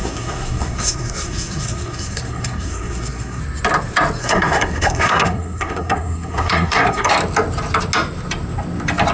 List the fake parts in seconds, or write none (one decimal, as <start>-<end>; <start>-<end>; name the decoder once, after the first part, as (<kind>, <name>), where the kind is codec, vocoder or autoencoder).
0.0-3.4 (codec, SNAC); 4.2-7.1